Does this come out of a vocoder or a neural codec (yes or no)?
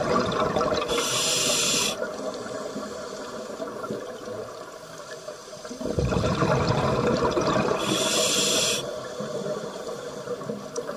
yes